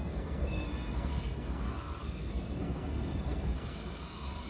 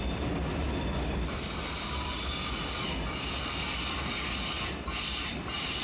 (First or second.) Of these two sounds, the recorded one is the second